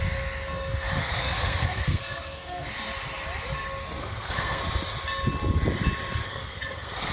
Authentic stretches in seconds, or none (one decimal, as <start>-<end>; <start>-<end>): 0.0-1.0; 2.7-4.0; 4.6-6.3